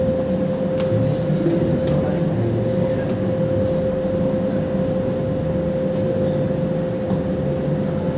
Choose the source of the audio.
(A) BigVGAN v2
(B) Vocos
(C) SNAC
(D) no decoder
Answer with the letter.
D